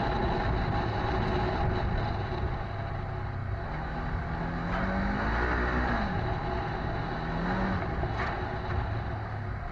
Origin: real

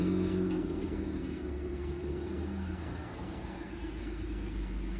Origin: fake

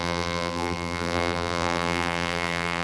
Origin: fake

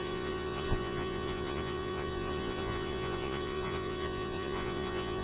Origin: fake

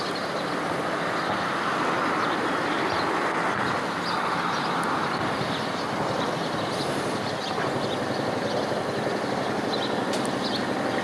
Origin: real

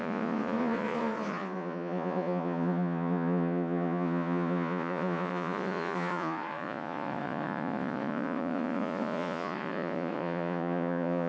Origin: fake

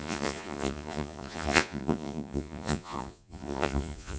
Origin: fake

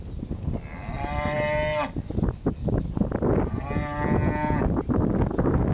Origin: real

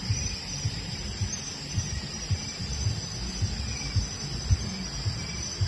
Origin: real